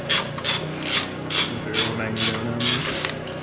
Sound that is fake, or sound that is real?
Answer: real